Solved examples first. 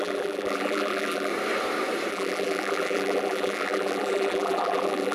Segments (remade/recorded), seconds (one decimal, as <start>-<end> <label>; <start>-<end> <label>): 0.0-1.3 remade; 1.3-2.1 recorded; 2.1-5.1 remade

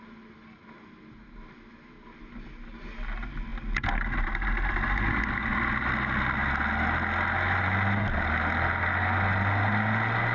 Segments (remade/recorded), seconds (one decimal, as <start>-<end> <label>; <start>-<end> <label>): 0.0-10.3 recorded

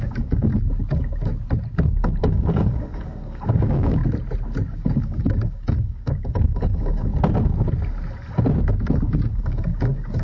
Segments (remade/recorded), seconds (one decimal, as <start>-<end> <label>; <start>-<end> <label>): 0.0-0.5 remade; 0.5-2.2 recorded; 2.2-4.0 remade; 4.0-4.7 recorded; 4.7-7.1 remade; 7.1-8.6 recorded; 8.6-10.2 remade